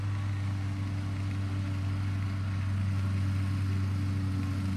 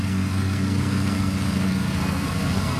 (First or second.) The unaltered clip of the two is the first